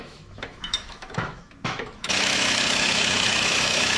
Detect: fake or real fake